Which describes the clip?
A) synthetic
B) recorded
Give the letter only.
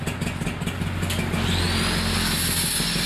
B